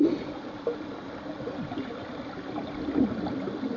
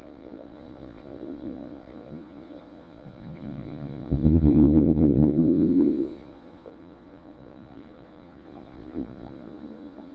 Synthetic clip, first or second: second